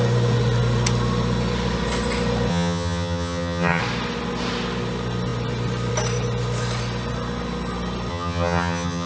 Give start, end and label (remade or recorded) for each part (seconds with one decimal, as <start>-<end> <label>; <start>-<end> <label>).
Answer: 0.0-2.5 recorded; 2.5-3.8 remade; 3.8-8.1 recorded; 8.1-9.1 remade